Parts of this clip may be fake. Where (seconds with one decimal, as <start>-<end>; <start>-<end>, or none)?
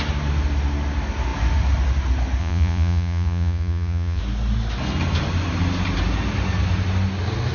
2.4-4.2